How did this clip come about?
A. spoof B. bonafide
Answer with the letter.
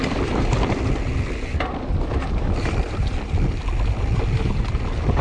B